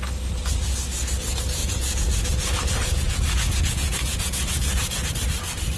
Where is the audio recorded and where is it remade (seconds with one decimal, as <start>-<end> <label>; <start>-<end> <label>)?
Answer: 0.0-1.6 recorded; 1.6-5.1 remade; 5.1-5.8 recorded